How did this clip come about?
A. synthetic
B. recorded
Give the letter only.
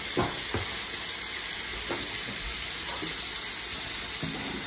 B